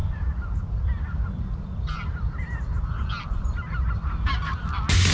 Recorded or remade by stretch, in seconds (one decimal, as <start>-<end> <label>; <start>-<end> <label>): 0.0-5.1 recorded